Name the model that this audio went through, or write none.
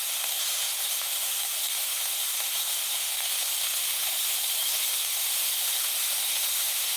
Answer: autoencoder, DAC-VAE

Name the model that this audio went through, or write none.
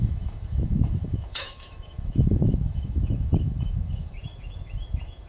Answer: autoencoder, DAC-VAE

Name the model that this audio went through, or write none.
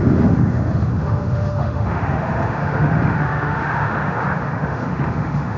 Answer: autoencoder, DAC-VAE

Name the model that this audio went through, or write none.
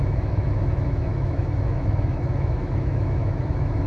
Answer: autoencoder, DAC-VAE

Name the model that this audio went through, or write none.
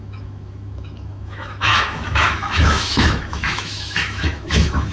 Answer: autoencoder, DAC-VAE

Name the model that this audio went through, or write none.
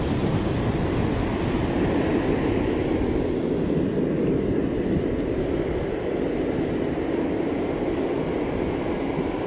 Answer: none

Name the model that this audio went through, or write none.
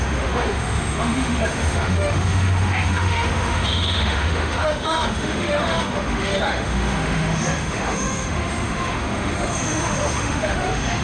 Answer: autoencoder, DAC-VAE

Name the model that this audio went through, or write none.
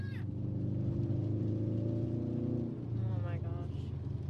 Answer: none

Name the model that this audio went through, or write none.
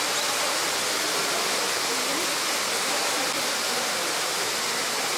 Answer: none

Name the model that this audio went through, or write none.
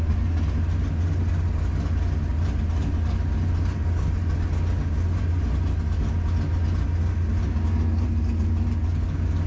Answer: none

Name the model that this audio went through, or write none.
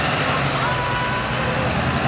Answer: none